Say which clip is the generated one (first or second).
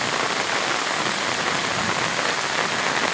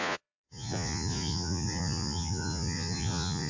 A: second